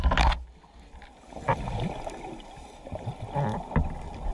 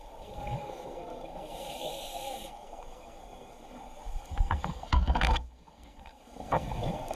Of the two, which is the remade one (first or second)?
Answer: second